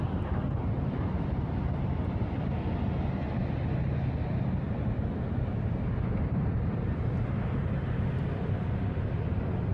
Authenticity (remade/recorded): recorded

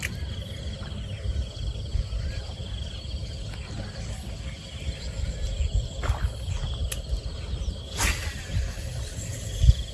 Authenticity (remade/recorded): recorded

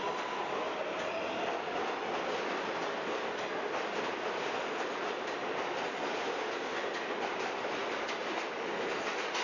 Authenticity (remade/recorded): recorded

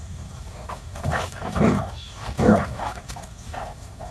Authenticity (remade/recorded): remade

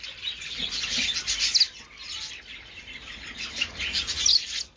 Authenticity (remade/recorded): recorded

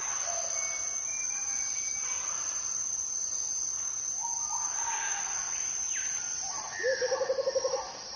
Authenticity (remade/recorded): recorded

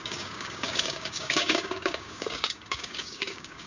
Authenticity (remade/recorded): remade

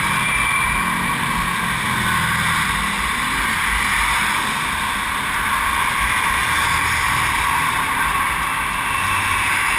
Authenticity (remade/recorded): recorded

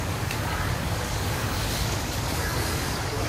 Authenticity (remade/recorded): remade